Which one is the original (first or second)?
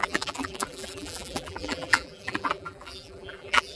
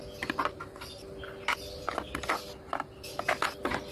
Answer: second